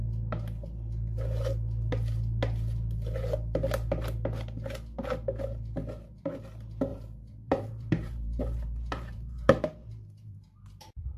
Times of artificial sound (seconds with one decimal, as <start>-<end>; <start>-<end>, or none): 6.9-11.2